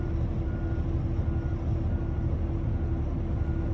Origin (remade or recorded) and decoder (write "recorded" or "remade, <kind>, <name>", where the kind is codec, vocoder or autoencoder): recorded